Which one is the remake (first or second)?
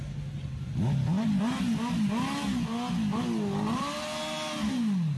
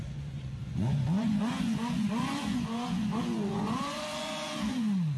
second